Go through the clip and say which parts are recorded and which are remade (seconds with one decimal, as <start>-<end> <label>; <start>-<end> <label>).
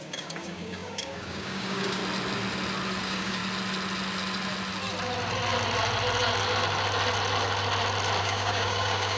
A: 0.0-2.0 remade; 2.0-3.0 recorded; 3.0-3.4 remade; 3.4-8.2 recorded; 8.2-9.2 remade